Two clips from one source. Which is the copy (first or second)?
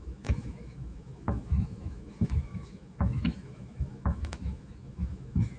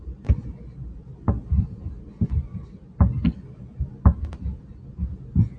first